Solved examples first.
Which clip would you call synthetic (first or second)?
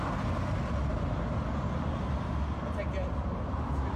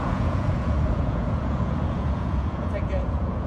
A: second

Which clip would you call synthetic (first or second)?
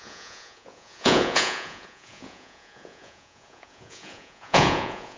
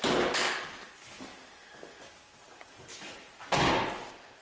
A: first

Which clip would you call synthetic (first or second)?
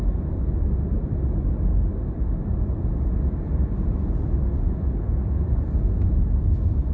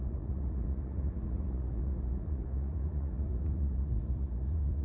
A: second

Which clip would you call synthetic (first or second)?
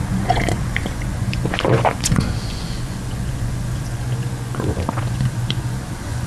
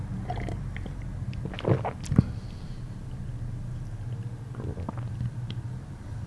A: first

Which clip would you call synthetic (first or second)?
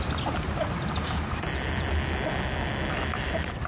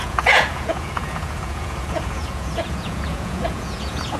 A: second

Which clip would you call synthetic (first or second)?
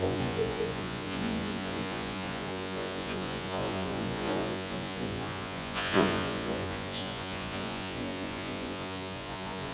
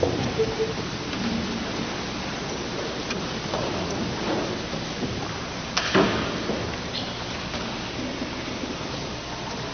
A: first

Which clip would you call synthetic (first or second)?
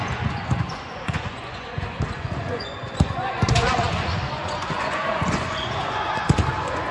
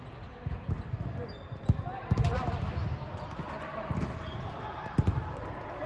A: first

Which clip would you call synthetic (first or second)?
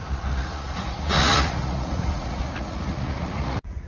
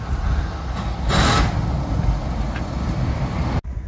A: first